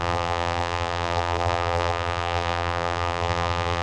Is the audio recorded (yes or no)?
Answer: no